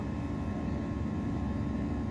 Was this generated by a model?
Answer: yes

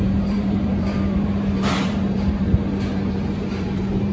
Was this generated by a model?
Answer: yes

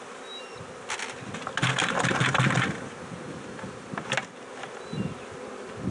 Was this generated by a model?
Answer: no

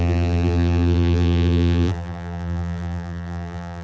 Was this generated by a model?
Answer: yes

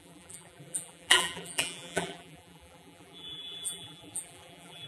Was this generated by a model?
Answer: yes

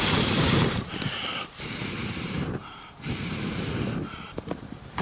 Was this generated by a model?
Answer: yes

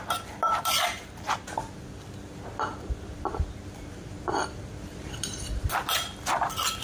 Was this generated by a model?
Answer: yes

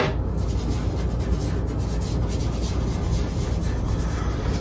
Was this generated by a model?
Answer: no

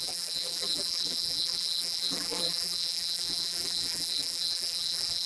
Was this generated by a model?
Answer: yes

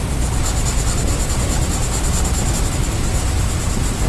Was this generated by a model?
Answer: no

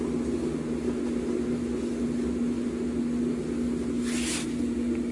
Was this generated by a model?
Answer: no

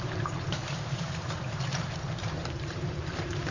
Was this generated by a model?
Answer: yes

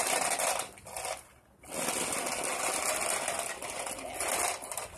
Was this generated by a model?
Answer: no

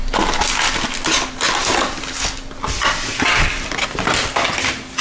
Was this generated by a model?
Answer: no